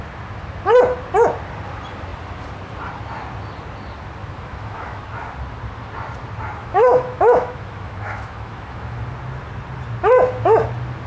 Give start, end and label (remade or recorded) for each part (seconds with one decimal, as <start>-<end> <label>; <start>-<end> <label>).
0.0-4.2 recorded; 4.2-5.0 remade; 5.0-6.6 recorded; 6.6-9.0 remade; 9.0-11.1 recorded